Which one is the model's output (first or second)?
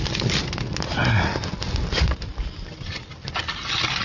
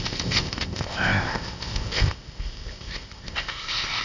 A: second